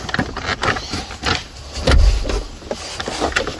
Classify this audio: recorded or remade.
recorded